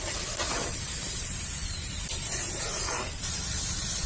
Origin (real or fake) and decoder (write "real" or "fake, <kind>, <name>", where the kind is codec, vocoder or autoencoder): fake, vocoder, BigVGAN v2